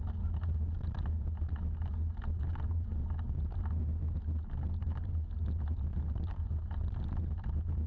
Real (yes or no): yes